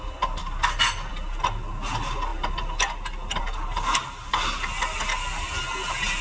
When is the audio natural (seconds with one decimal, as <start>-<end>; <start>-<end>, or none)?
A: 0.0-6.2